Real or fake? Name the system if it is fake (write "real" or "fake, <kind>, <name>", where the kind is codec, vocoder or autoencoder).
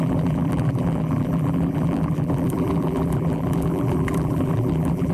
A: fake, vocoder, BigVGAN v2